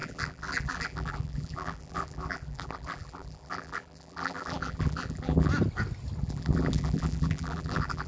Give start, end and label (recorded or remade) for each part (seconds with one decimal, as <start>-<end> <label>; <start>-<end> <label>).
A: 0.0-5.5 remade; 5.5-6.2 recorded; 6.2-8.1 remade